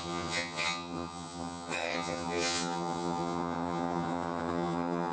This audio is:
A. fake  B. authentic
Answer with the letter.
A